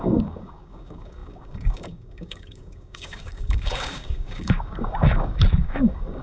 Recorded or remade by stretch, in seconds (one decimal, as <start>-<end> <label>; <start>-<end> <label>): 0.0-6.2 remade